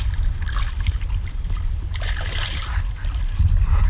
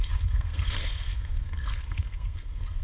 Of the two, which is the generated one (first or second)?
second